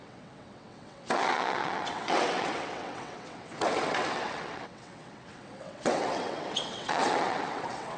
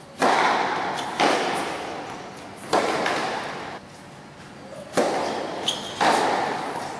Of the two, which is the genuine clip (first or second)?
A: second